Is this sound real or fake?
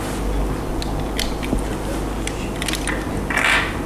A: real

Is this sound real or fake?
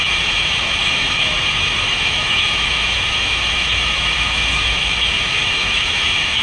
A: fake